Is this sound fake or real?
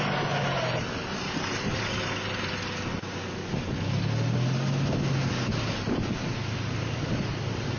real